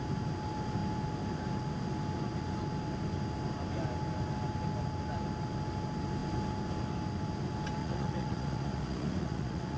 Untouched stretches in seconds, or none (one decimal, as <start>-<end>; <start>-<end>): 0.0-7.8